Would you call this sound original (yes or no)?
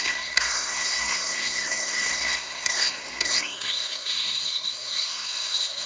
no